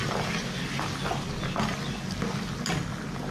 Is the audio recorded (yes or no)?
yes